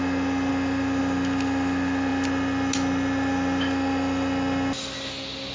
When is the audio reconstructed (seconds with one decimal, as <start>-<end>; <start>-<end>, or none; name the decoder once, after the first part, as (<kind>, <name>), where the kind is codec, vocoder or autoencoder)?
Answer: none